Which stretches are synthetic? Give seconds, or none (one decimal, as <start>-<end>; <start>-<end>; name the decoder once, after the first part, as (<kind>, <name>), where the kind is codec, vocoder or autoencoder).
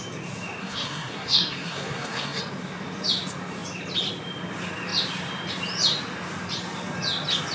0.6-2.4 (codec, SNAC)